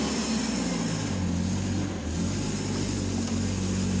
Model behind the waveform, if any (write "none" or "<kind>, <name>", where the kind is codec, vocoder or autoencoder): none